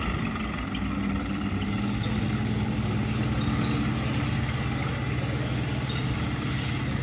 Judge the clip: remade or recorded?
recorded